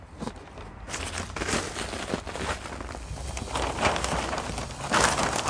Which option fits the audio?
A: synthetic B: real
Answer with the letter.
B